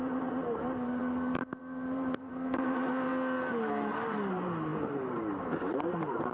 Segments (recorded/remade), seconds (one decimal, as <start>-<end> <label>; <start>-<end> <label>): 0.0-3.1 remade; 3.1-4.3 recorded; 4.3-6.3 remade

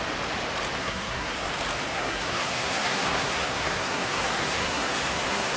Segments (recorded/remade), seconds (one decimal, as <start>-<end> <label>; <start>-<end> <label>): 0.0-0.8 recorded; 0.8-1.5 remade; 1.5-1.9 recorded; 1.9-5.6 remade

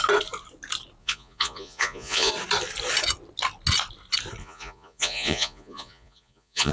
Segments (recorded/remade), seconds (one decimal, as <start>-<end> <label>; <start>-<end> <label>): 0.0-1.0 recorded; 1.0-2.3 remade; 2.3-4.4 recorded; 4.4-6.7 remade

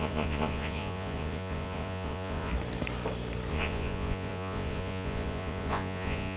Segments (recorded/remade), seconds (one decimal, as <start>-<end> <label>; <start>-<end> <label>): 0.0-2.5 remade; 2.5-3.5 recorded; 3.5-6.4 remade

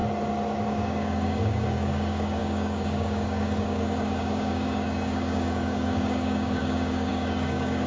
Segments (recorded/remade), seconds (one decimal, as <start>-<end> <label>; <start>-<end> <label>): 0.0-0.7 recorded; 0.7-7.9 remade